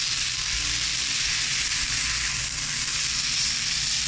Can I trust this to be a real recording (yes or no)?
yes